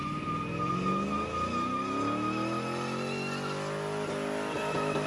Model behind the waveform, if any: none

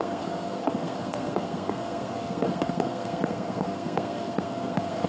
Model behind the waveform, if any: codec, SNAC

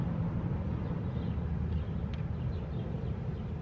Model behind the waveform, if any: none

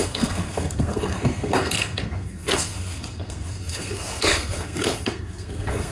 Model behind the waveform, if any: codec, SNAC